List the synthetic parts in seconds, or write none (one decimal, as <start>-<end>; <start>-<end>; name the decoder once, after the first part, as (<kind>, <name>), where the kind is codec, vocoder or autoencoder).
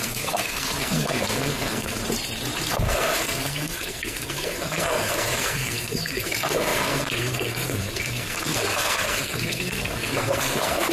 0.0-2.0 (codec, SNAC); 2.7-10.9